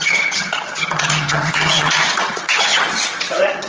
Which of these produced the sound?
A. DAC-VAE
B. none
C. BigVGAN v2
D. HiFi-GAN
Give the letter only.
D